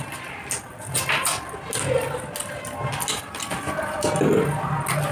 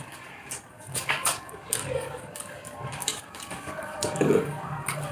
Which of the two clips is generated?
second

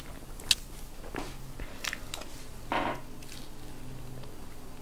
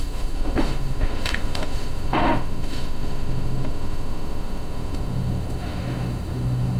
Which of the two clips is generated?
second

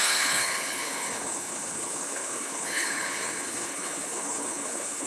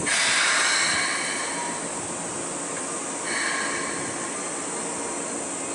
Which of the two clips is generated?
first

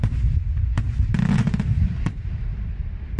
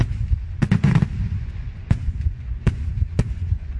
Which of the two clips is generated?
second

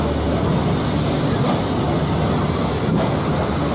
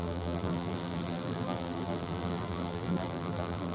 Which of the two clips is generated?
second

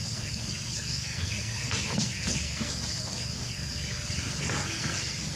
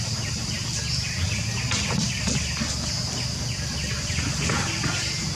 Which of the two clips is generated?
first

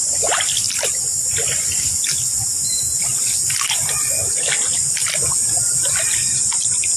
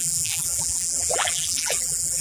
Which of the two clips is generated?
second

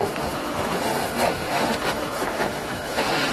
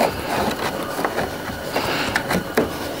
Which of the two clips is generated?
first